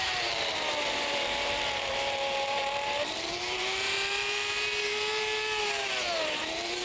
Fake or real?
fake